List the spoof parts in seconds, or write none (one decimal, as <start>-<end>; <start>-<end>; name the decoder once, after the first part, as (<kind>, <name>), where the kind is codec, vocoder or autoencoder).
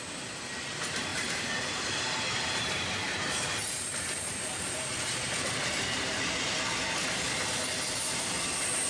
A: 1.1-6.2 (vocoder, BigVGAN v2)